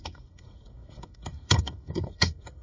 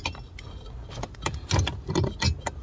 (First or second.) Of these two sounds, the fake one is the first